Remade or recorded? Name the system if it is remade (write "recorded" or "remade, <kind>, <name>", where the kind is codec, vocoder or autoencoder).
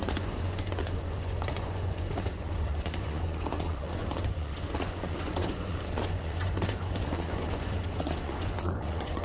remade, vocoder, Vocos